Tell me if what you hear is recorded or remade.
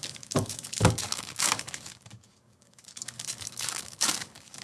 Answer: remade